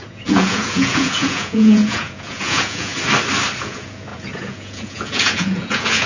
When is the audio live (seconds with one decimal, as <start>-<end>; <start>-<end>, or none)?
2.9-3.6